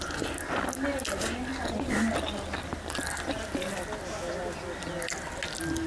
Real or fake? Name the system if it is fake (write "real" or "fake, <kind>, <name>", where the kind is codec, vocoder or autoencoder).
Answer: real